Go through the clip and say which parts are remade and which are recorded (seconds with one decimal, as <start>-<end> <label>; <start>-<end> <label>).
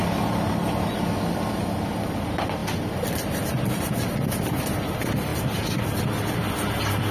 0.0-7.1 recorded